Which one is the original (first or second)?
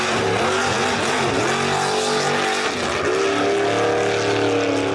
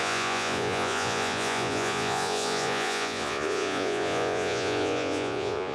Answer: first